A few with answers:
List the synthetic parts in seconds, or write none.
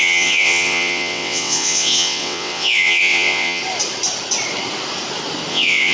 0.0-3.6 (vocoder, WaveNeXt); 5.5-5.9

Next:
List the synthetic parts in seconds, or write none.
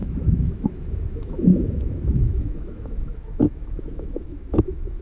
0.0-5.0 (autoencoder, DAC-VAE)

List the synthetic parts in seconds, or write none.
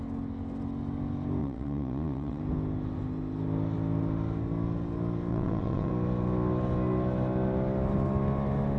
1.4-2.4 (vocoder, WaveNeXt); 5.3-5.9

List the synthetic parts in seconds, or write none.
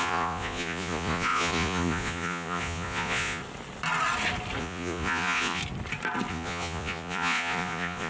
0.0-3.4 (vocoder, Vocos); 4.6-5.6; 6.3-8.1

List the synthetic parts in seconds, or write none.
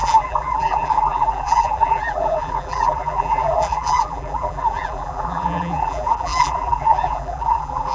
0.0-7.9 (vocoder, BigVGAN v2)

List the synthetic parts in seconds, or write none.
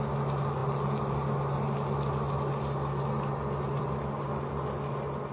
none